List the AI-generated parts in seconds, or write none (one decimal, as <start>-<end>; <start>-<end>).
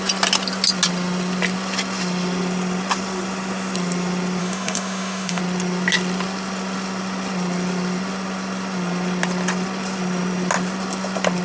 4.4-5.4